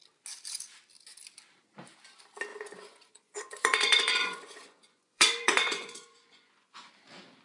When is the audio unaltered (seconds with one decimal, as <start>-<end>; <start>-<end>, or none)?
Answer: 0.0-2.5; 6.9-7.4